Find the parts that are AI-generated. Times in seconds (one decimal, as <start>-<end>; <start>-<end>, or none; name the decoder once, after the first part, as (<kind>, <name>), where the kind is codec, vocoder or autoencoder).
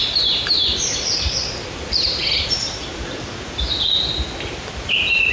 0.0-2.5 (vocoder, BigVGAN v2)